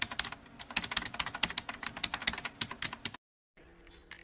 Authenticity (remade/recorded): recorded